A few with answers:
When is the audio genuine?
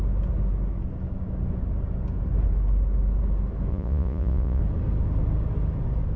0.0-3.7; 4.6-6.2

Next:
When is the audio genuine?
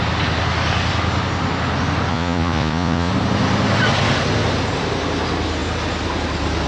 0.0-2.1; 3.1-6.7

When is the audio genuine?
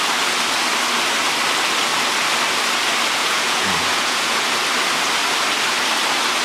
0.0-3.2; 4.4-6.4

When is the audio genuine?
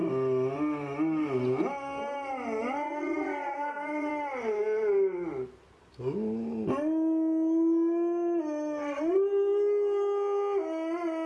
0.0-2.6; 4.1-11.3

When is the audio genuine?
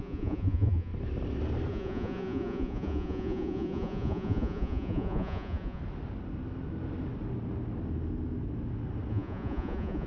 0.9-1.7; 5.8-9.1